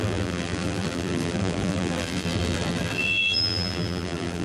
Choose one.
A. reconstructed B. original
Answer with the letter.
A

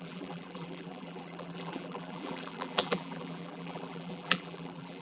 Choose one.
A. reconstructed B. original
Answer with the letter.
A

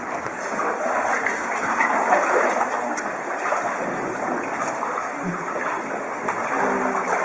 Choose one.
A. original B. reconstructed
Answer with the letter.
A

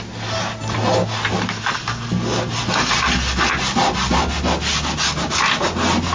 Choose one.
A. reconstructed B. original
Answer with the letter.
B